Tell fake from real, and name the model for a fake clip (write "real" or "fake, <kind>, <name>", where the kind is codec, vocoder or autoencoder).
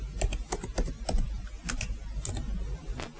real